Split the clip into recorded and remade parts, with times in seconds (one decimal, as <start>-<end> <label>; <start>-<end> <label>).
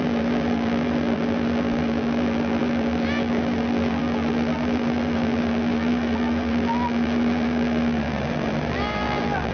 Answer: 0.0-9.5 remade